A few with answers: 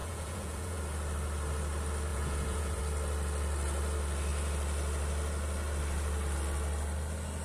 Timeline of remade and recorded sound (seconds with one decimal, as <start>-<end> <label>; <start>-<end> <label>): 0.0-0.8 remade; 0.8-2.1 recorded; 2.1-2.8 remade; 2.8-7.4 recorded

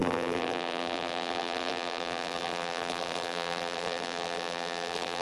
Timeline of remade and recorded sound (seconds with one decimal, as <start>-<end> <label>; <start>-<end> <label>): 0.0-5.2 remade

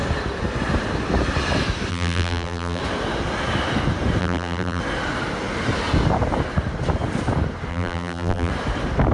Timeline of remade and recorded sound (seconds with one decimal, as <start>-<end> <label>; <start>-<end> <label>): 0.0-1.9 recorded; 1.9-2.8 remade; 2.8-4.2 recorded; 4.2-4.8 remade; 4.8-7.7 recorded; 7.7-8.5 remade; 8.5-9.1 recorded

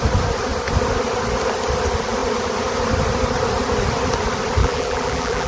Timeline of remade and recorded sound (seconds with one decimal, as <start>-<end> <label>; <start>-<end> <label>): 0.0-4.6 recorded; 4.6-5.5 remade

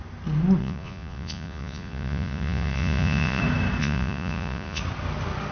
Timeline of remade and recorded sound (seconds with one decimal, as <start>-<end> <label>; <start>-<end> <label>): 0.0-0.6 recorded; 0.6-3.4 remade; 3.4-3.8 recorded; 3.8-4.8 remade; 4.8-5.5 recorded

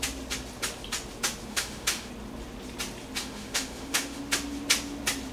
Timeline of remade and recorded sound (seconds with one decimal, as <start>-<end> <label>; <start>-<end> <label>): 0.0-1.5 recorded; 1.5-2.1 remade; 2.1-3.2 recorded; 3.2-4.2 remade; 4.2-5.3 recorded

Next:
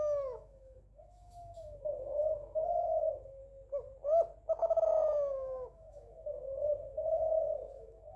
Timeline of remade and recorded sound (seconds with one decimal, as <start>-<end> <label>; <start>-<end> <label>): 0.0-3.4 remade; 3.4-4.6 recorded; 4.6-8.2 remade